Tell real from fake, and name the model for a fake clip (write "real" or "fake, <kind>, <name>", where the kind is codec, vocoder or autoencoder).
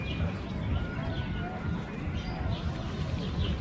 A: real